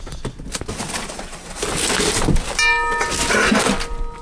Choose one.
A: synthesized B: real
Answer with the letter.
B